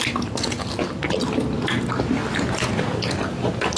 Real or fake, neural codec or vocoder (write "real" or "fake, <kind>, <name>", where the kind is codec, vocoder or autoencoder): real